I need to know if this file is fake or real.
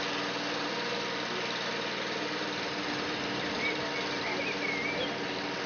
real